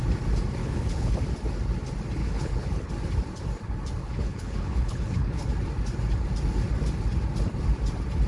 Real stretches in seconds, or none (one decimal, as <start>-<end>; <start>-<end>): 0.0-0.6; 1.2-2.2; 2.9-4.0; 5.5-8.3